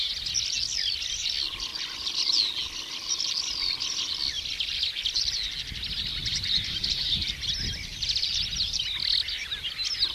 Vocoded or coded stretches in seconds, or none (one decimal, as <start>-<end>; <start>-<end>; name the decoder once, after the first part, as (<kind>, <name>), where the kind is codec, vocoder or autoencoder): 6.3-7.5 (vocoder, BigVGAN v2); 7.9-8.8